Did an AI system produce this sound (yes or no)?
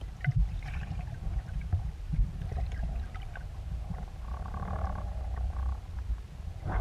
yes